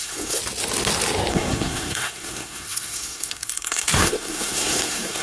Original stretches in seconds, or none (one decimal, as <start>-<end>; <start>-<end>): 0.4-1.3